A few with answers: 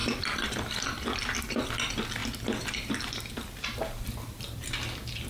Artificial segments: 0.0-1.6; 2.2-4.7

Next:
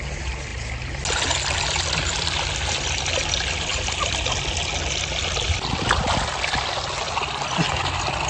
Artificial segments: 3.7-4.3